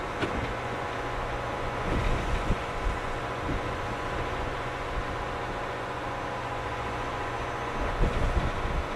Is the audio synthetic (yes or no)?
yes